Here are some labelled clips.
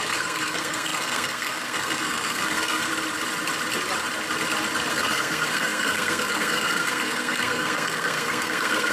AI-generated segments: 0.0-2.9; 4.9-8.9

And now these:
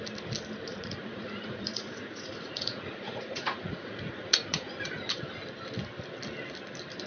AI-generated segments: 0.7-5.0

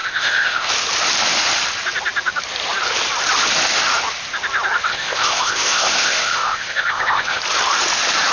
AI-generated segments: 0.0-0.7; 4.9-7.4

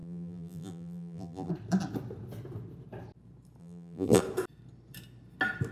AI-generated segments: 0.0-1.5; 3.6-4.2

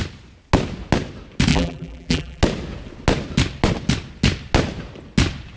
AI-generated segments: 1.5-2.4

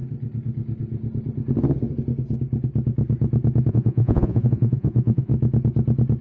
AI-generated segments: 3.7-5.3

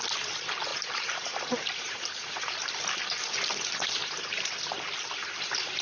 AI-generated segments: 0.7-2.7; 4.0-4.5; 5.2-5.8